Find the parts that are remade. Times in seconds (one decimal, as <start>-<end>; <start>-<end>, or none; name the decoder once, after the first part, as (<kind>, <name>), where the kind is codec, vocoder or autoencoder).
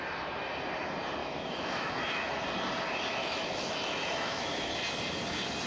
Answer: 1.2-2.3 (autoencoder, DAC-VAE); 3.2-4.7